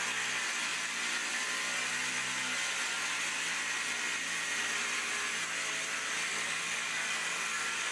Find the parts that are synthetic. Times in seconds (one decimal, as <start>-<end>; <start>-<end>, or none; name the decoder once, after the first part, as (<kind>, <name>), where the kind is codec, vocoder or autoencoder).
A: 6.3-7.9 (codec, DAC)